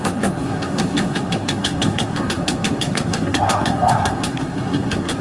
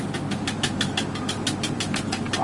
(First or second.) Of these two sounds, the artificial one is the first